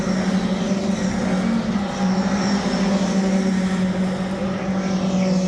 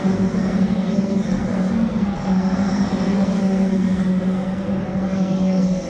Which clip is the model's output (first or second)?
second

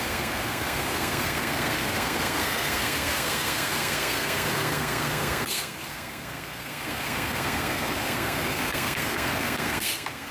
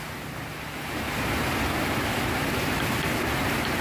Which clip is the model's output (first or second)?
first